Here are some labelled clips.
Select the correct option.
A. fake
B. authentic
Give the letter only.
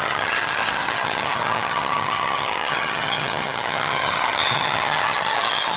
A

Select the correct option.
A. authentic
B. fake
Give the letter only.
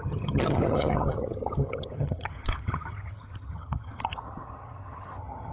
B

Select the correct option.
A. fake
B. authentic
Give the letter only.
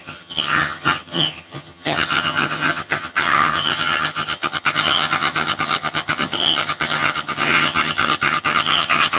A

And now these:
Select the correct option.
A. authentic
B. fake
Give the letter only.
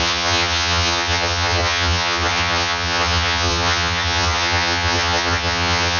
B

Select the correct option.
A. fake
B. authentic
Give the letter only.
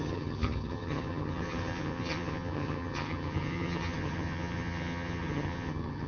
A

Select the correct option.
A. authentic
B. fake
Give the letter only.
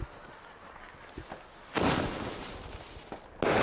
A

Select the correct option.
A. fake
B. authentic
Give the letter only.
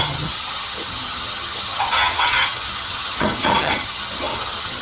A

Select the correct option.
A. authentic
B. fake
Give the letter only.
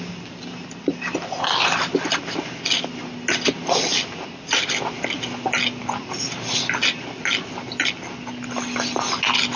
A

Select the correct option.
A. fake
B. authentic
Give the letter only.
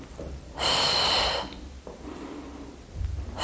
B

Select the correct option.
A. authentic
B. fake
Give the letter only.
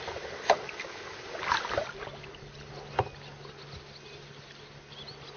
A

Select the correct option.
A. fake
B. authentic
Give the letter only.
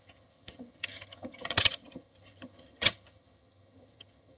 A